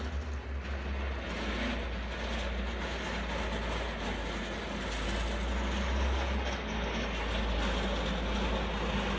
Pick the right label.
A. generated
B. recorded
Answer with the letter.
B